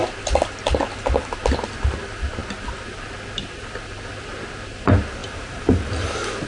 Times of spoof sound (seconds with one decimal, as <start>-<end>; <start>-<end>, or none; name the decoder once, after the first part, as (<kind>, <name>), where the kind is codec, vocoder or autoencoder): 5.2-5.9 (vocoder, BigVGAN v2)